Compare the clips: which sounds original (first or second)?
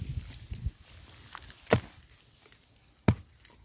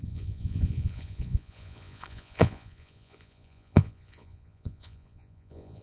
first